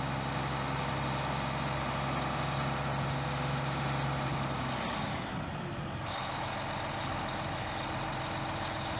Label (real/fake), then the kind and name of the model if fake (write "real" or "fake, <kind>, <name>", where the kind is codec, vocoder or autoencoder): real